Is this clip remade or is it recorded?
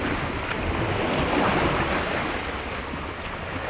recorded